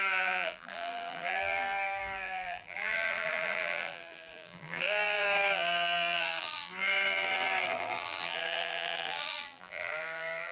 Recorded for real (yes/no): no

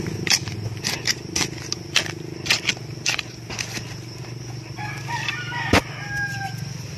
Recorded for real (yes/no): no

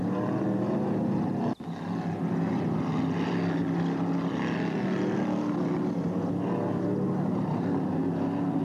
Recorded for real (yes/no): yes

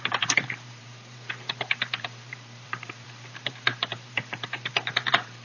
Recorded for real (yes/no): no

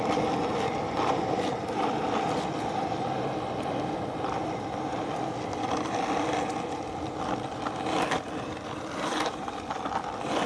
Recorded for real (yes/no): yes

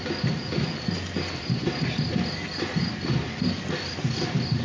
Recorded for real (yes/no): yes